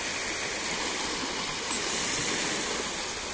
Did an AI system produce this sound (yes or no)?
no